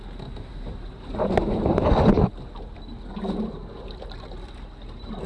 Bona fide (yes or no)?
yes